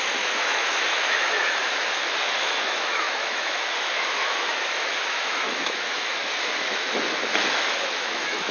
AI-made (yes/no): yes